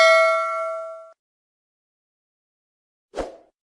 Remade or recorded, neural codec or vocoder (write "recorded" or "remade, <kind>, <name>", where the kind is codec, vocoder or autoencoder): recorded